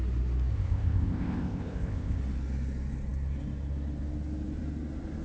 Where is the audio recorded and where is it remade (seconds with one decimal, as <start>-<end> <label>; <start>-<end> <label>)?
0.0-0.5 recorded; 0.5-2.2 remade; 2.2-5.2 recorded